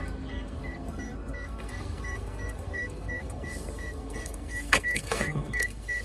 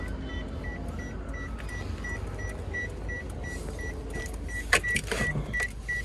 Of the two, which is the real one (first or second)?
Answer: second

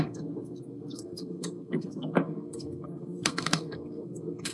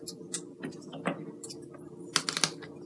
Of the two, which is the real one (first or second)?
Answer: second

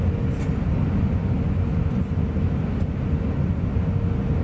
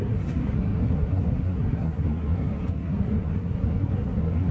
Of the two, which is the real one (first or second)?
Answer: first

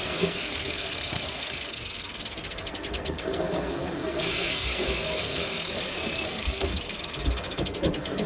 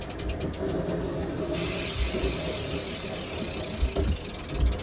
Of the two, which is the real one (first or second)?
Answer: second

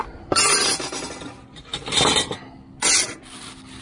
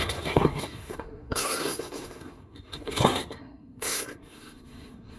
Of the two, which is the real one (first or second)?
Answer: first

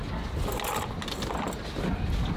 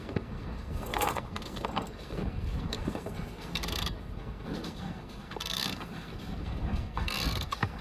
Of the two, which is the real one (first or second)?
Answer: first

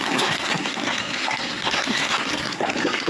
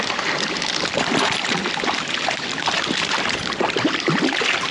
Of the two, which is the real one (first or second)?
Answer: second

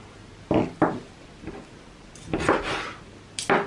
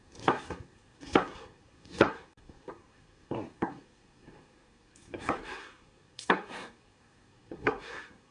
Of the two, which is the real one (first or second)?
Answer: first